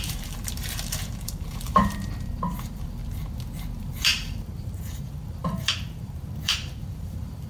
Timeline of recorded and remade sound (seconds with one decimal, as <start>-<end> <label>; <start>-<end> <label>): 0.0-3.0 remade; 3.0-3.8 recorded; 3.8-7.5 remade